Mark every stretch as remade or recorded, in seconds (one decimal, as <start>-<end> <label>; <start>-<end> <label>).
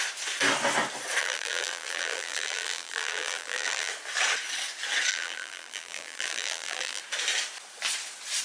0.0-1.2 recorded; 1.2-3.9 remade; 3.9-5.1 recorded; 5.1-7.0 remade; 7.0-8.4 recorded